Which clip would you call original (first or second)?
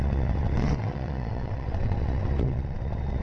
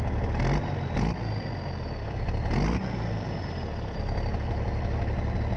second